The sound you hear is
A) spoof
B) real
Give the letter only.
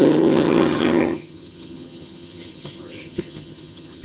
A